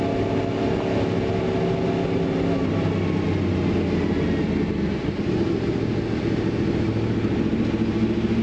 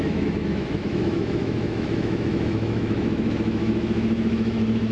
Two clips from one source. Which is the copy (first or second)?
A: second